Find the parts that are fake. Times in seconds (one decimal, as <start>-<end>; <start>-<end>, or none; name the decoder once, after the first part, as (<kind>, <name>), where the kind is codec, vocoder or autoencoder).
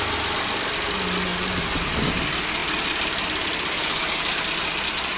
none